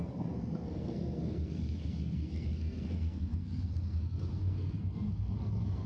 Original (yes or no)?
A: no